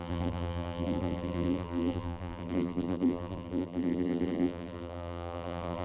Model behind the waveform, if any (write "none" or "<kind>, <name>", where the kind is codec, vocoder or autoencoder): vocoder, BigVGAN v2